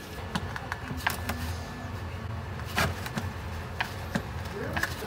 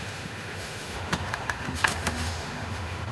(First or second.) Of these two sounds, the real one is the first